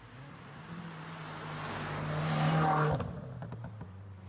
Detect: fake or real real